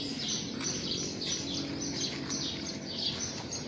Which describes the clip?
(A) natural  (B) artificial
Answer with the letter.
A